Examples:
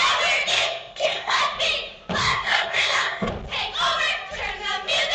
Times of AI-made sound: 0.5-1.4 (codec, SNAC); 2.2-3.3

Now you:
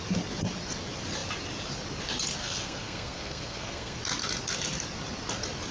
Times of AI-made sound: 2.4-4.0 (codec, SNAC)

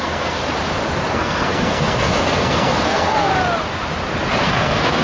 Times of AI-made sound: 0.0-0.4 (codec, SNAC); 1.1-3.3; 4.4-5.0

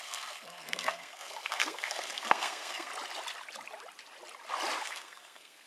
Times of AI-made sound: 0.0-2.9 (codec, SNAC); 4.8-5.7

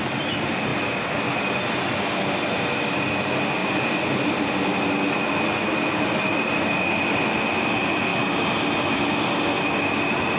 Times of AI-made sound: none